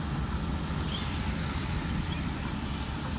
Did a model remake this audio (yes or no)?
no